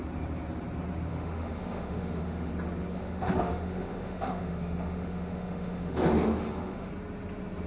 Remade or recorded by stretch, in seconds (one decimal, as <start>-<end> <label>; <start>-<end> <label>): 0.0-1.1 recorded; 1.1-2.5 remade; 2.5-2.9 recorded; 2.9-6.9 remade; 6.9-7.7 recorded